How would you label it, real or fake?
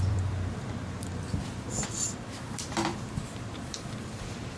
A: fake